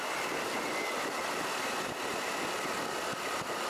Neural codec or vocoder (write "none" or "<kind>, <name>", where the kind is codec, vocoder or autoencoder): none